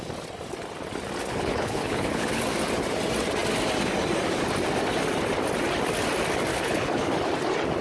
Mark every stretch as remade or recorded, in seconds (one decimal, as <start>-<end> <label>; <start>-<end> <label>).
0.0-1.3 recorded; 1.3-2.4 remade; 2.4-6.5 recorded; 6.5-7.1 remade; 7.1-7.8 recorded